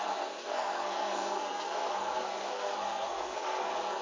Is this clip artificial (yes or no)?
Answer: yes